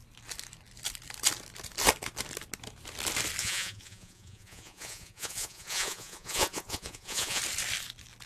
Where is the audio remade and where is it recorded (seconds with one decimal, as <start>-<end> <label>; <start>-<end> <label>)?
0.0-3.4 recorded; 3.4-7.4 remade; 7.4-8.3 recorded